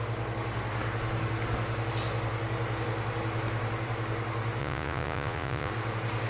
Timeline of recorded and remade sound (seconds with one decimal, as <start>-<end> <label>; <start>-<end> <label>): 0.0-4.6 recorded; 4.6-5.7 remade; 5.7-6.3 recorded